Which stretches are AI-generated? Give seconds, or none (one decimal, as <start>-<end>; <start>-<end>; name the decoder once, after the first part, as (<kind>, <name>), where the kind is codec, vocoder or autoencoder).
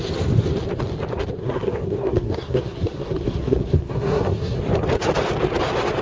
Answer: 1.4-4.6 (codec, SNAC)